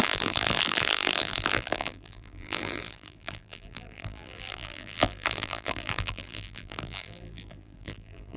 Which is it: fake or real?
fake